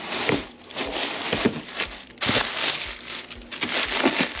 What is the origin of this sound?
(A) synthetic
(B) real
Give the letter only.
B